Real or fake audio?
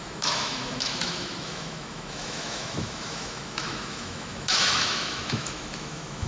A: fake